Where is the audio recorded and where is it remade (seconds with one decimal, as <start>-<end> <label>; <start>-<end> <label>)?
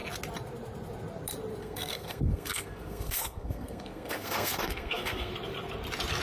0.0-1.6 recorded; 1.6-5.3 remade; 5.3-6.2 recorded